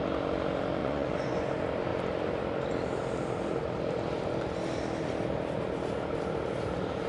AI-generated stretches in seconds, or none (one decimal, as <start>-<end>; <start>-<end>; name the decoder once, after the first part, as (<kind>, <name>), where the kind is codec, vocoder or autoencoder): 0.8-1.5 (vocoder, Vocos)